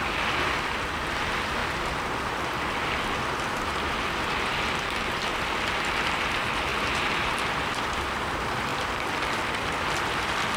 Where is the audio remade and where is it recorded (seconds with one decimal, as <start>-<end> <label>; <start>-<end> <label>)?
0.0-1.6 remade; 1.6-5.0 recorded; 5.0-6.7 remade; 6.7-7.5 recorded; 7.5-8.7 remade; 8.7-9.3 recorded; 9.3-10.6 remade